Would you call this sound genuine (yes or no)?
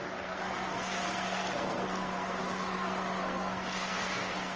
no